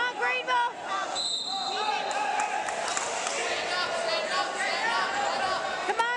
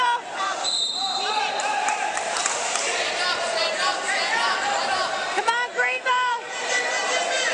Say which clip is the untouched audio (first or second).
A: first